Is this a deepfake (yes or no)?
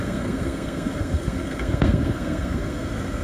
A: yes